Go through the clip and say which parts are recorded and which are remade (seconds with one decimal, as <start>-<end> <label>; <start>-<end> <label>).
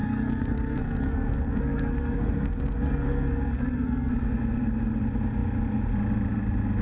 0.0-4.1 remade; 4.1-6.8 recorded